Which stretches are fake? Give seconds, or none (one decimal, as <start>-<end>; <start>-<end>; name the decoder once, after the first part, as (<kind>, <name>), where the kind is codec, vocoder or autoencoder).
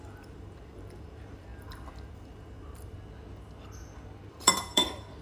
0.0-2.9 (vocoder, BigVGAN v2); 4.3-5.2